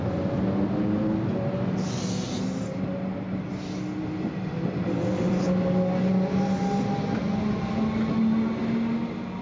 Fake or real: real